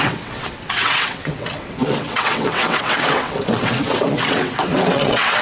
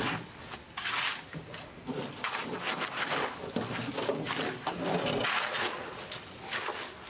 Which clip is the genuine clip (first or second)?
second